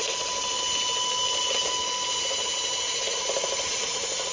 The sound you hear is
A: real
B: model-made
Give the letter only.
A